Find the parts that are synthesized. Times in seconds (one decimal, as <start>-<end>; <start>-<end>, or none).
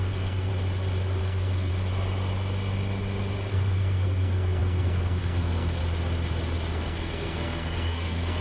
0.0-0.5; 1.2-1.7; 3.5-5.8; 6.7-8.4